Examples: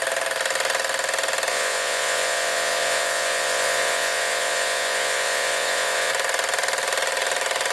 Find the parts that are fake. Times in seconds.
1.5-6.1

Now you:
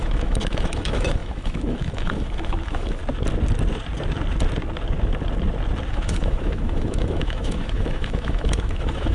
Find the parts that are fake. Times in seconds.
0.0-3.0; 5.9-9.1

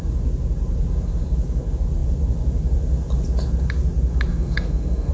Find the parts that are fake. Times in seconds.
4.3-5.1

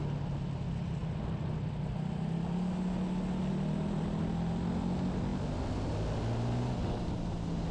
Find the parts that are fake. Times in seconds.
none

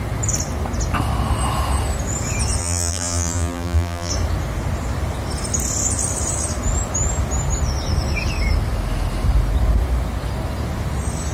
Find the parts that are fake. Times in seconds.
2.6-4.1